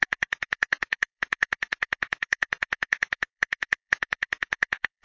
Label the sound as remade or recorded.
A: remade